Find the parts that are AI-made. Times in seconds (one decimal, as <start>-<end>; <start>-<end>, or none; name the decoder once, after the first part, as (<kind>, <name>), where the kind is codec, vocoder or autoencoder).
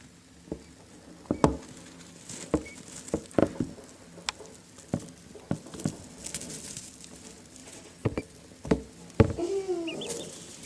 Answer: 7.6-8.2 (vocoder, WaveNeXt)